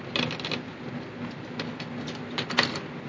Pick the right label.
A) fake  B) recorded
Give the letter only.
B